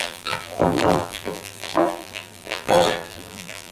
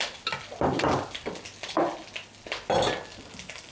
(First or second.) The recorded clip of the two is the second